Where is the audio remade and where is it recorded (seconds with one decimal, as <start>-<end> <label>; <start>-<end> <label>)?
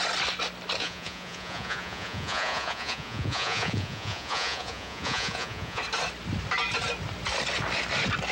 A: 0.0-0.8 recorded; 0.8-5.8 remade; 5.8-8.3 recorded